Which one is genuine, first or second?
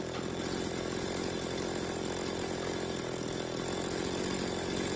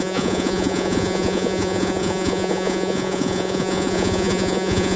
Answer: first